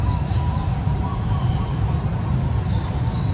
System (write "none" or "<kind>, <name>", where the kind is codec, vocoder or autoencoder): none